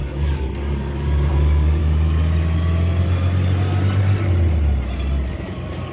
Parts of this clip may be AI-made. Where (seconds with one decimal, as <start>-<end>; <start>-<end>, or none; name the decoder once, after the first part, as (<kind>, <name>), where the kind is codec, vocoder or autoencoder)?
0.0-1.8 (codec, DAC); 5.3-5.9